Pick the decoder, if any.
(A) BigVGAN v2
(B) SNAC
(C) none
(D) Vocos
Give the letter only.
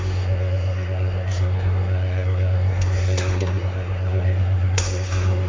B